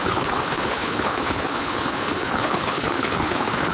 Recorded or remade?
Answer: remade